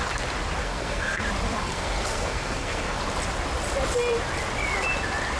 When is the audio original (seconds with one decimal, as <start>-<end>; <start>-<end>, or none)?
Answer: 0.0-0.6; 1.2-1.6; 3.0-5.4